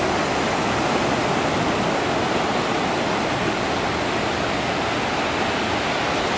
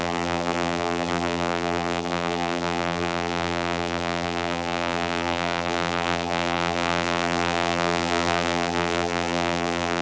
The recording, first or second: first